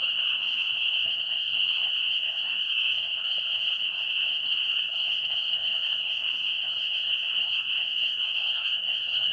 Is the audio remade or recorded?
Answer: remade